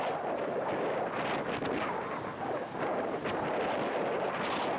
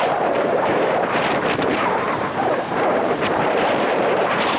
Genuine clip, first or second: first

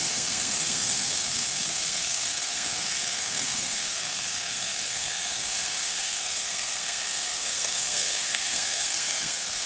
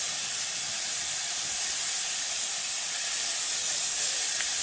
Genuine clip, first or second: second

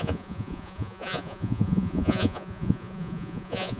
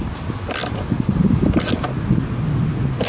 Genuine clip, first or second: second